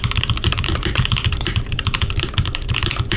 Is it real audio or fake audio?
fake